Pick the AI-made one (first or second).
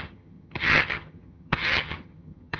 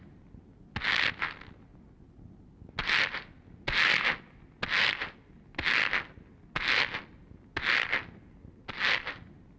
first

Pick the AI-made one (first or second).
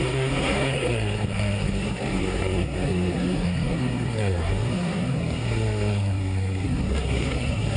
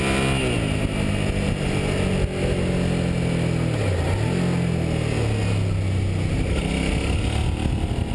first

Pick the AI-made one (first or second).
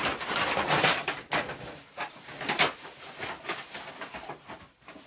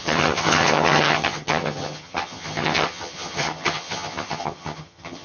second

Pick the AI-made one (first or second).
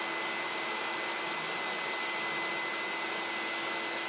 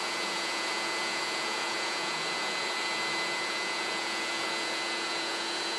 second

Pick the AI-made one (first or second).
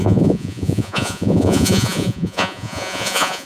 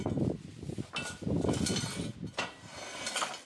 first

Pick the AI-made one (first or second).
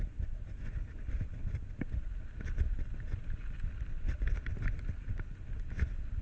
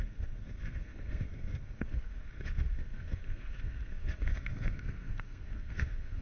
second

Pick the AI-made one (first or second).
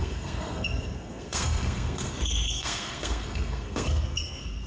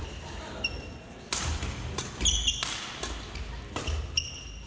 first